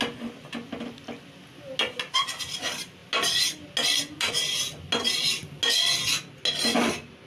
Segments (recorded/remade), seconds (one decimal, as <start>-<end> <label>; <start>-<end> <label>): 0.0-7.3 recorded